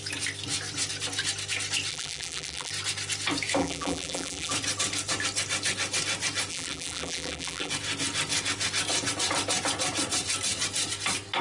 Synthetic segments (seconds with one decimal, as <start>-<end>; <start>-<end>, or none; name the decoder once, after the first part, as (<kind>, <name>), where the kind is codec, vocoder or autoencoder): 1.9-2.7 (vocoder, BigVGAN v2); 3.6-4.5; 6.5-7.7